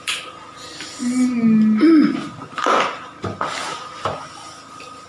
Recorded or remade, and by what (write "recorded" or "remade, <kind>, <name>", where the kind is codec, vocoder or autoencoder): recorded